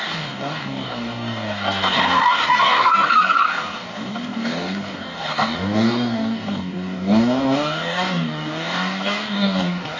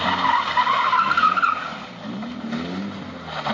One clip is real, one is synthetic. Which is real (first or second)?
second